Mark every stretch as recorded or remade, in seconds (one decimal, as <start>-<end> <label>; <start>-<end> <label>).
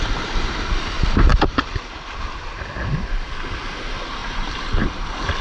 0.0-1.3 recorded; 1.3-2.2 remade; 2.2-4.2 recorded; 4.2-5.0 remade; 5.0-5.4 recorded